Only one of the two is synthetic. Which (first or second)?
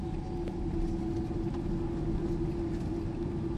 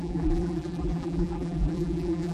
second